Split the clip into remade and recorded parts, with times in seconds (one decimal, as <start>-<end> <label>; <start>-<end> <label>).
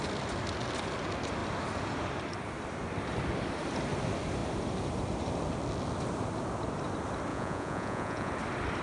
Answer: 0.0-7.3 recorded; 7.3-8.3 remade; 8.3-8.8 recorded